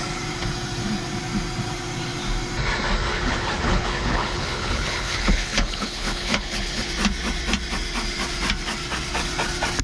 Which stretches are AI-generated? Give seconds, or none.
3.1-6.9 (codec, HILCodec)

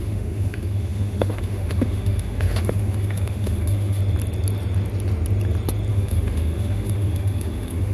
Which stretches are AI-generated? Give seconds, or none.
0.0-4.0 (autoencoder, DAC-VAE); 5.9-7.9

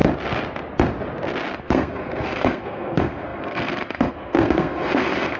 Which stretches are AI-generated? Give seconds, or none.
1.6-5.4 (codec, SNAC)